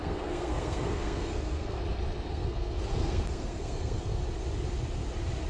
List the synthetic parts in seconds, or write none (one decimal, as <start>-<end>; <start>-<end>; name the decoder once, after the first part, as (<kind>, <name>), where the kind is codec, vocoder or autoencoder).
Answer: 0.0-1.8 (codec, SNAC); 2.3-4.2